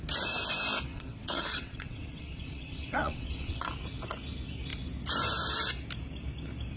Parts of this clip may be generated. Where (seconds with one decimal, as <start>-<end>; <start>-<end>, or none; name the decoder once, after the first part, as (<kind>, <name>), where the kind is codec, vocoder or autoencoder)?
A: 0.9-3.7 (vocoder, WaveNeXt)